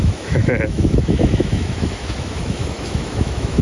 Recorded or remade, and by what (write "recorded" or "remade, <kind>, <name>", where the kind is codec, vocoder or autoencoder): remade, autoencoder, DAC-VAE